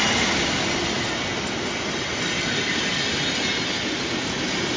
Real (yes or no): yes